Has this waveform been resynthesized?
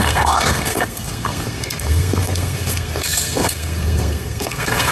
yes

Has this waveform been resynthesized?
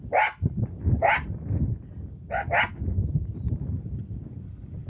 no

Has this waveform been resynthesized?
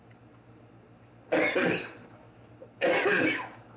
no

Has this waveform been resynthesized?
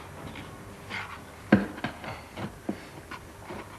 no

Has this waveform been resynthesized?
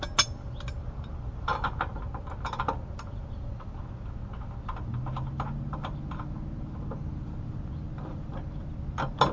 no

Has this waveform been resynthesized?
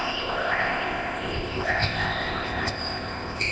yes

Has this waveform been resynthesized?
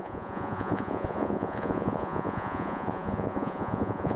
yes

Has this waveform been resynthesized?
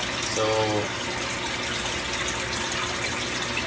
no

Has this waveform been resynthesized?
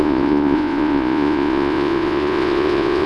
yes